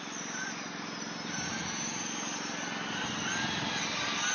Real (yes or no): yes